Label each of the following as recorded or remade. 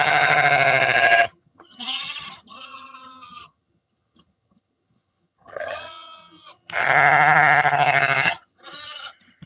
remade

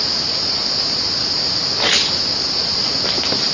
recorded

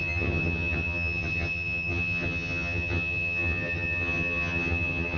remade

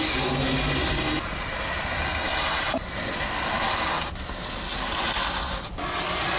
recorded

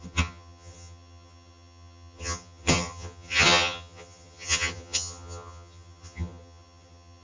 remade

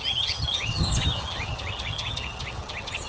remade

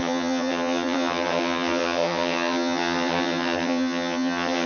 remade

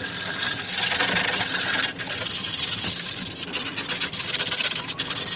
recorded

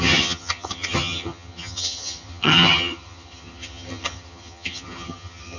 remade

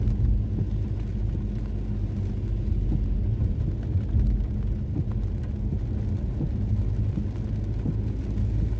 recorded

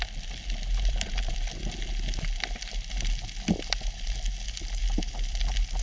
recorded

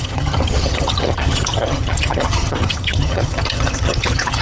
remade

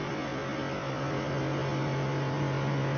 recorded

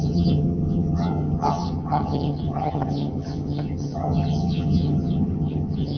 remade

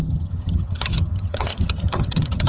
remade